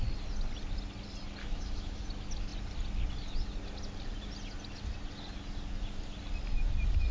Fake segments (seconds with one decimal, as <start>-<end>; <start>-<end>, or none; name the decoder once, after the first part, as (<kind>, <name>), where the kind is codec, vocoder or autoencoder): 1.4-2.0 (autoencoder, DAC-VAE)